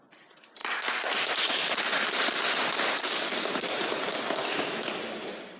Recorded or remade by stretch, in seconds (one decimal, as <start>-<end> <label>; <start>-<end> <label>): 0.0-4.4 recorded; 4.4-4.9 remade; 4.9-5.6 recorded